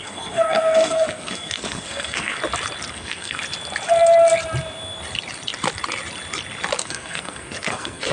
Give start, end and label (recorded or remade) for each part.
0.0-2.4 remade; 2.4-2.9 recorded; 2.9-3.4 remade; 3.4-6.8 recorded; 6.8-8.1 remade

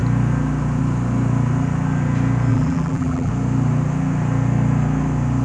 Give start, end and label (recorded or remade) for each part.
0.0-2.5 recorded; 2.5-3.3 remade; 3.3-5.4 recorded

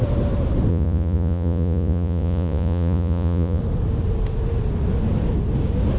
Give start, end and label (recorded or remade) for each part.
0.0-0.7 recorded; 0.7-3.6 remade; 3.6-6.0 recorded

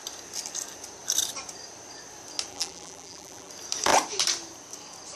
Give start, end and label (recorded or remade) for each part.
0.0-2.5 recorded; 2.5-3.5 remade; 3.5-5.2 recorded

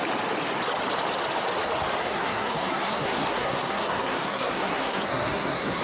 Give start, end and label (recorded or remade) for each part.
0.0-2.0 recorded; 2.0-5.8 remade

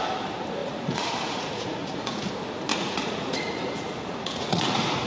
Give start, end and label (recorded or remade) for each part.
0.0-0.6 recorded; 0.6-2.3 remade; 2.3-2.7 recorded; 2.7-5.1 remade

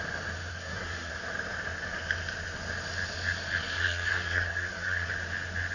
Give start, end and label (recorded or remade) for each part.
0.0-0.5 recorded; 0.5-1.1 remade; 1.1-3.7 recorded; 3.7-5.1 remade; 5.1-5.7 recorded

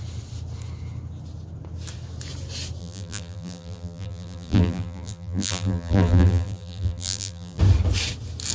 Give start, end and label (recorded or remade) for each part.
0.0-2.8 recorded; 2.8-7.6 remade; 7.6-8.5 recorded